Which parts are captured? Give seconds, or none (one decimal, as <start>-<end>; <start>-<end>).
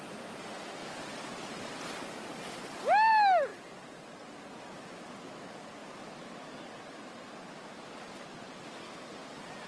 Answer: 0.0-9.7